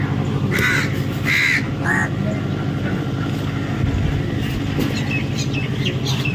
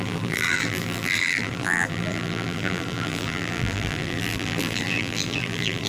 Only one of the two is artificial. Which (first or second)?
second